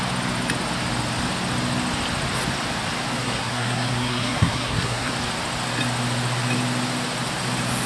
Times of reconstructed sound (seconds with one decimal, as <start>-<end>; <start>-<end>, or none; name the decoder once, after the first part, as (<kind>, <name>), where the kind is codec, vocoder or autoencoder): 3.2-5.1 (codec, SNAC)

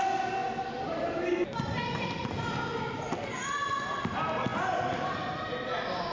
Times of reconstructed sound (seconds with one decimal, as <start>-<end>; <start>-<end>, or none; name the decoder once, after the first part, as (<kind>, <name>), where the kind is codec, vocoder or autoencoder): 0.4-1.3 (vocoder, BigVGAN v2)

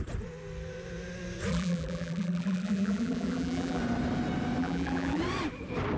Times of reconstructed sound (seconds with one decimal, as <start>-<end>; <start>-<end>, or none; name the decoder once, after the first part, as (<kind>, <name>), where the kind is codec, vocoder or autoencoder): 1.5-3.8 (vocoder, BigVGAN v2); 4.6-5.2

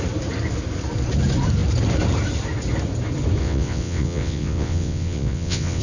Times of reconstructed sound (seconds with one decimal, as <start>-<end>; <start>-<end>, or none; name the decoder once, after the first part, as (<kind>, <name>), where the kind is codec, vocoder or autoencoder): 3.4-5.8 (vocoder, WaveNeXt)